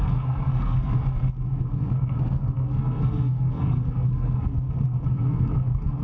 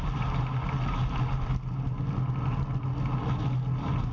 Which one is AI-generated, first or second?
first